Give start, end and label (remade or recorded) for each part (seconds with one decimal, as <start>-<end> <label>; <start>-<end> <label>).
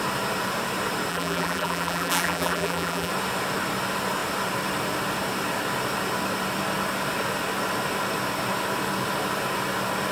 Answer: 0.0-1.1 recorded; 1.1-3.1 remade; 3.1-10.1 recorded